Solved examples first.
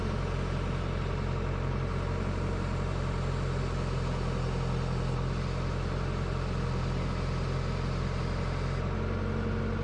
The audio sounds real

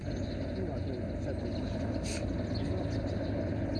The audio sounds real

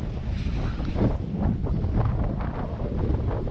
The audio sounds real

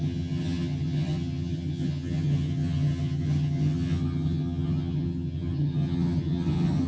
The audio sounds fake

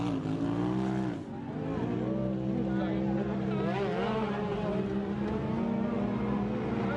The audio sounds real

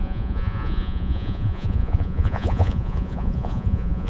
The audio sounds fake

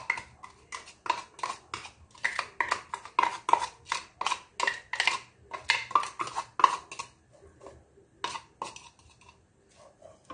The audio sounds real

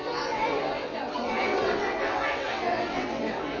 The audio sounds fake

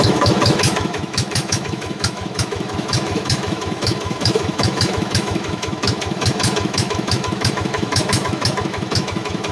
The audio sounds fake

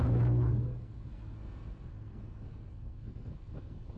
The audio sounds fake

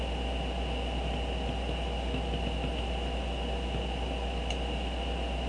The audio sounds real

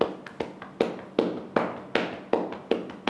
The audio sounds real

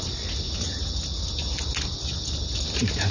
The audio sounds real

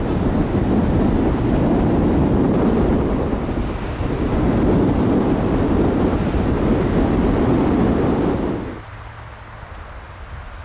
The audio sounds real